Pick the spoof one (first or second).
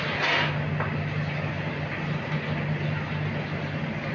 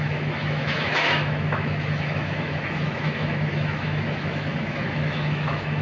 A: second